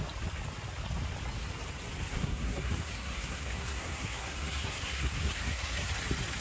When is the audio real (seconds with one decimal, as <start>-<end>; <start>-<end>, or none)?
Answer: 0.0-2.1; 5.9-6.4

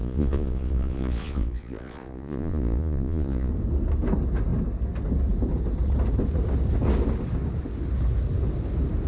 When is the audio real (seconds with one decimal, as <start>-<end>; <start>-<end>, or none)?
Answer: 3.5-9.1

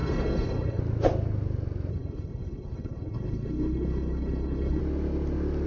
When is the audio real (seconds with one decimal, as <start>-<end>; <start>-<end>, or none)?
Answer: 0.8-1.9; 4.8-5.7

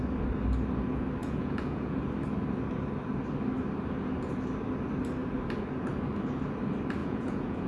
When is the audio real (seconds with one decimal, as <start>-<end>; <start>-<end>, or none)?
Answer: 0.0-1.2; 2.0-7.0

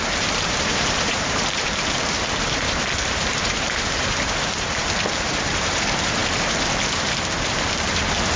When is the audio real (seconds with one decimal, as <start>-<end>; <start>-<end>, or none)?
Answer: none

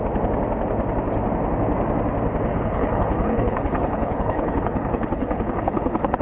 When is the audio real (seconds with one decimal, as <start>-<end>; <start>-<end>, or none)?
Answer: 0.0-2.5

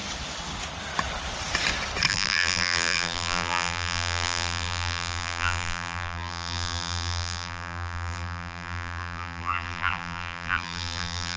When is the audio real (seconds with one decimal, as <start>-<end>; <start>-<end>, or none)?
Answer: 0.0-2.1